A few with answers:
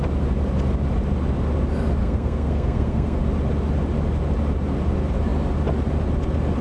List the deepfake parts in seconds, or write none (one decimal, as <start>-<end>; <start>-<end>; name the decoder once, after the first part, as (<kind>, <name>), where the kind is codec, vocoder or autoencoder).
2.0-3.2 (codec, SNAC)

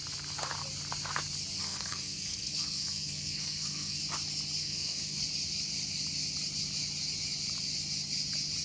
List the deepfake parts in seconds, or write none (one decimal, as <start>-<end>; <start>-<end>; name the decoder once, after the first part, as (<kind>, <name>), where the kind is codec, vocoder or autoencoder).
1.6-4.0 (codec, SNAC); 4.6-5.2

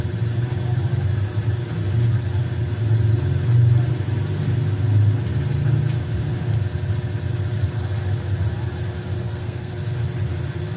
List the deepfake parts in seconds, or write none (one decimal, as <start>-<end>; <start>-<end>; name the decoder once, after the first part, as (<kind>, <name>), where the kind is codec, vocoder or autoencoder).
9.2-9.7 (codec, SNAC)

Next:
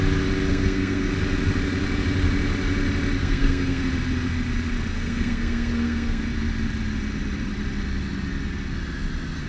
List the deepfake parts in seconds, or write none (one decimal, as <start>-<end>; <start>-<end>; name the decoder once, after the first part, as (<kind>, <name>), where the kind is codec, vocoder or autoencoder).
0.5-1.1 (codec, SNAC); 3.2-3.8; 4.9-6.2

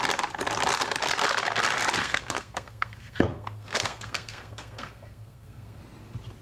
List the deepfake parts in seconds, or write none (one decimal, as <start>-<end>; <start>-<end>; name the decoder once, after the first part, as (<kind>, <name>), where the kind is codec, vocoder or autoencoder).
2.0-5.8 (codec, SNAC)